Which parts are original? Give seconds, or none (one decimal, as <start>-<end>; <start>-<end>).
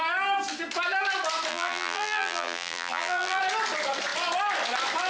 0.0-1.5; 3.4-5.1